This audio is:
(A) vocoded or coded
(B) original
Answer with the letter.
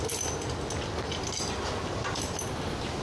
B